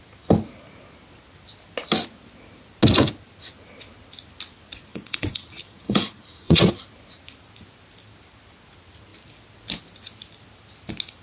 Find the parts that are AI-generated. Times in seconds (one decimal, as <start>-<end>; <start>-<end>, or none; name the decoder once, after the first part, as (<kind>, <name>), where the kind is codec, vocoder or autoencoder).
4.9-6.7 (vocoder, Vocos)